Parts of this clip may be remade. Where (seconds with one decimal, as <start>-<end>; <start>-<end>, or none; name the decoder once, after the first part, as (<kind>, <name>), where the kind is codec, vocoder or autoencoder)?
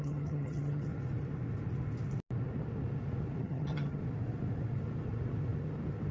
0.0-0.9 (vocoder, HiFi-GAN); 3.4-4.0